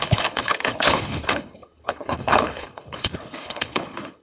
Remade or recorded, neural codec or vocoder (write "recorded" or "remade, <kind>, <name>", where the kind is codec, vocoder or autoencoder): remade, codec, HILCodec